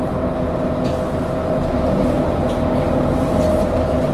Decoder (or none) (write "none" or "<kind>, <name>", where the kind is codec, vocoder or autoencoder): none